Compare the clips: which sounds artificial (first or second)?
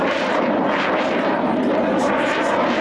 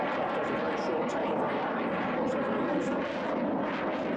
first